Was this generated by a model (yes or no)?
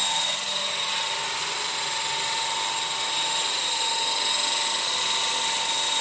no